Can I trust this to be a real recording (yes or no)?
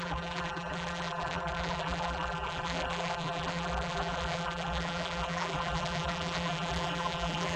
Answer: no